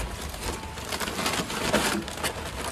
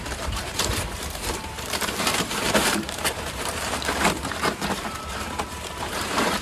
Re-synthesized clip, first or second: second